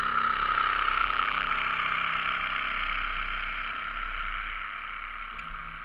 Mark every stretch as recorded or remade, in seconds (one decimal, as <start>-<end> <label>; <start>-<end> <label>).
0.0-1.0 recorded; 1.0-1.5 remade; 1.5-5.8 recorded